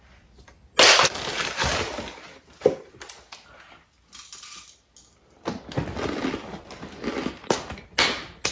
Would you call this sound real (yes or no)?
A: yes